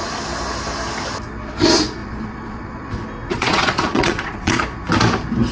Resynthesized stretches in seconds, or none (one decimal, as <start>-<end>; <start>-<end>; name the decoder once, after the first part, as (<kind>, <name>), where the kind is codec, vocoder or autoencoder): 2.0-2.9 (vocoder, Vocos); 3.3-4.6